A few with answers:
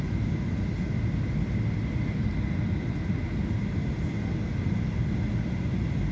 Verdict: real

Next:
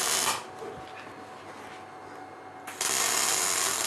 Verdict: real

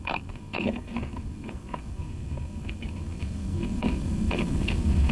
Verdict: fake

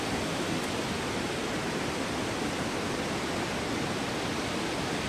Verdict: real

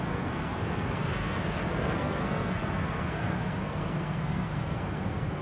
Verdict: fake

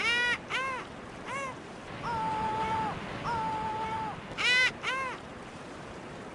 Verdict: real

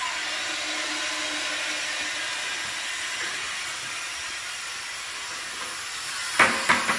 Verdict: real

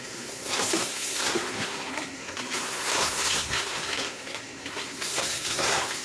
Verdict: fake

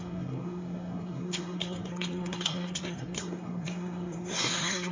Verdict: fake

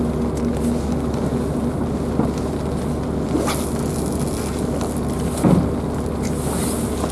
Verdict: real